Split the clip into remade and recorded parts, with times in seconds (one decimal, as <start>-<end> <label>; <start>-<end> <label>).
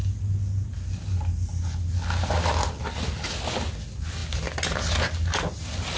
0.0-6.0 recorded